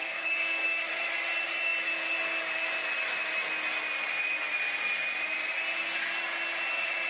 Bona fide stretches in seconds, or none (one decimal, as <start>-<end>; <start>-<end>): 0.9-7.1